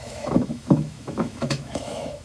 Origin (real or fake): fake